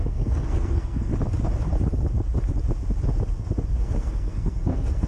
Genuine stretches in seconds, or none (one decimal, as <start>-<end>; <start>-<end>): 1.1-3.7